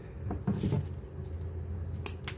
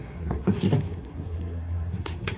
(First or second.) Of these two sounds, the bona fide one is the first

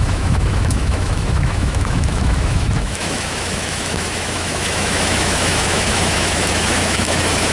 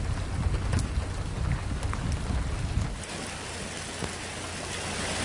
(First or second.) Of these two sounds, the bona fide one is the second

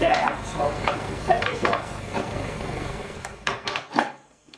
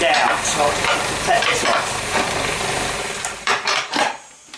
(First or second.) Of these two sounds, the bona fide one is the second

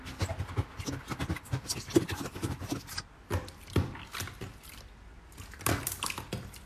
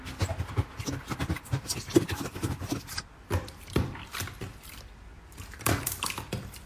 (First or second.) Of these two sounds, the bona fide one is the first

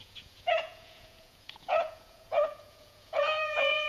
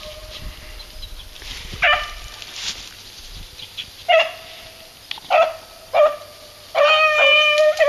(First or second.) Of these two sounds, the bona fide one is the second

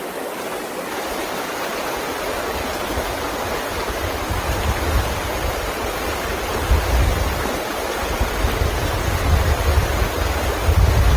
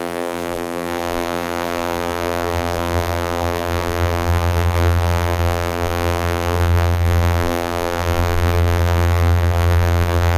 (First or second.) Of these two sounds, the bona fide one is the first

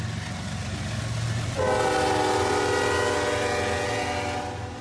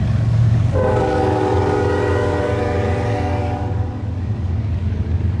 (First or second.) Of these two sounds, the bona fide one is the first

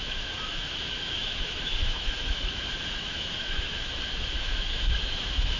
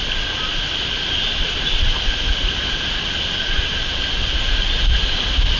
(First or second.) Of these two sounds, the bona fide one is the second